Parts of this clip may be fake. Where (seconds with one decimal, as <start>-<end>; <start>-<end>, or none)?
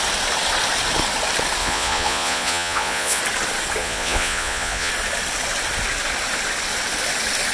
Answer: 1.6-3.2; 3.8-4.9